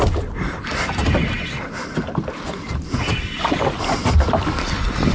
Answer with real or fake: real